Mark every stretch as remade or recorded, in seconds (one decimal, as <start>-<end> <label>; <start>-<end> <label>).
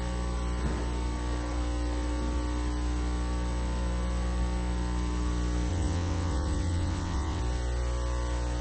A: 0.0-5.7 recorded; 5.7-7.4 remade; 7.4-8.6 recorded